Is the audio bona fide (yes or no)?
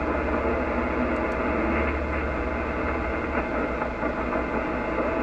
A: yes